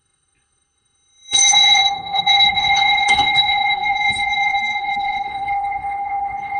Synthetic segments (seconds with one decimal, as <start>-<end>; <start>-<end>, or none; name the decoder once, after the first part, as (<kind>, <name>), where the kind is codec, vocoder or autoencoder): 0.0-6.6 (codec, HILCodec)